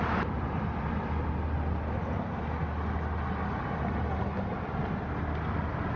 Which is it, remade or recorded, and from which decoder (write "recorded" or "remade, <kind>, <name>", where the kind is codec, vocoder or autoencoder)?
recorded